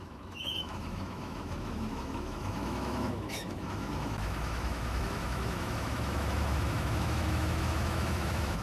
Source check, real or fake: fake